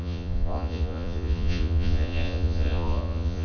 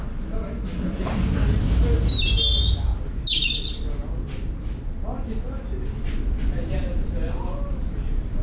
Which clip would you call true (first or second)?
second